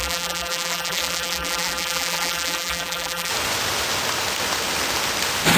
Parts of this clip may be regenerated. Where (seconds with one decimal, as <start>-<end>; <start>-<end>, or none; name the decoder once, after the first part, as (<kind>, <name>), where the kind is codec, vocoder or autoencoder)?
0.0-3.3 (vocoder, BigVGAN v2)